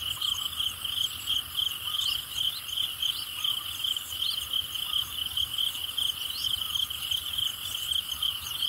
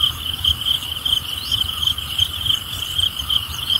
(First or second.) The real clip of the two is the first